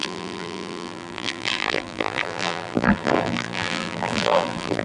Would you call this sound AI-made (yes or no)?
yes